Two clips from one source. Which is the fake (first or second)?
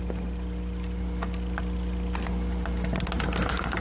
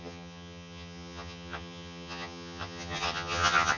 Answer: second